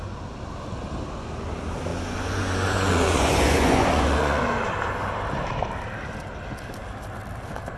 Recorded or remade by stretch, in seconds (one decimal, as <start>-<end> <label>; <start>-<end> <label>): 0.0-1.9 recorded; 1.9-4.4 remade; 4.4-7.8 recorded

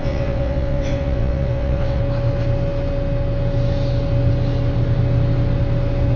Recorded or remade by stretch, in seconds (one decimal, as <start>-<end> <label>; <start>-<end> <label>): 0.0-2.0 remade; 2.0-6.2 recorded

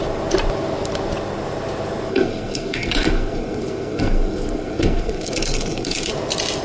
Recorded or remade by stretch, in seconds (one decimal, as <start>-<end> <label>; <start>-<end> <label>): 0.0-2.1 recorded; 2.1-6.1 remade; 6.1-6.6 recorded

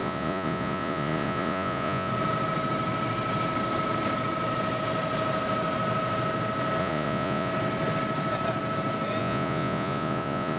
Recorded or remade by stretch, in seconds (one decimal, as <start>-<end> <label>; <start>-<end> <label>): 0.0-2.1 remade; 2.1-6.8 recorded; 6.8-7.5 remade; 7.5-9.2 recorded; 9.2-10.6 remade

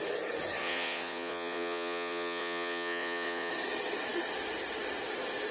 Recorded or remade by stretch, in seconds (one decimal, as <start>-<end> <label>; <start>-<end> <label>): 0.0-0.6 recorded; 0.6-3.5 remade; 3.5-5.5 recorded

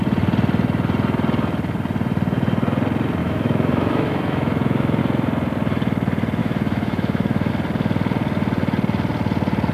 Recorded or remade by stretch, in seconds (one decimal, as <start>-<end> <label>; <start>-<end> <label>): 0.0-3.2 recorded; 3.2-5.0 remade; 5.0-6.4 recorded; 6.4-7.5 remade; 7.5-9.7 recorded

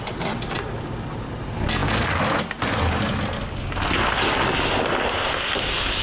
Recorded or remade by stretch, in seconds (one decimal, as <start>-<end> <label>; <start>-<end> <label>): 0.0-6.0 recorded

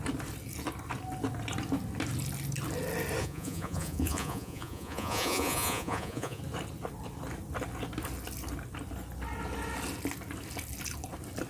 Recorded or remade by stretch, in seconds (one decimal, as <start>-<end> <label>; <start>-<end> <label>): 0.0-3.2 recorded; 3.2-6.4 remade; 6.4-11.5 recorded